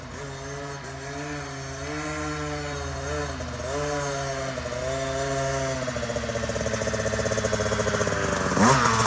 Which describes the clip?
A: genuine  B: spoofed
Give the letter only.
A